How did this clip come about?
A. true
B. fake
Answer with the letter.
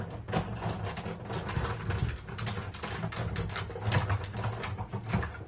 A